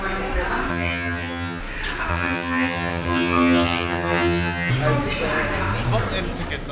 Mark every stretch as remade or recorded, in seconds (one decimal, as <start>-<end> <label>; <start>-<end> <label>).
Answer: 0.0-0.7 recorded; 0.7-1.6 remade; 1.6-2.1 recorded; 2.1-4.7 remade; 4.7-6.7 recorded